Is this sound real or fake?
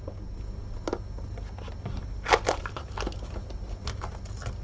real